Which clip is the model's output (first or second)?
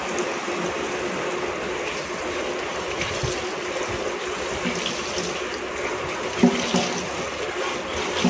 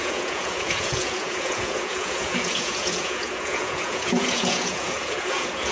second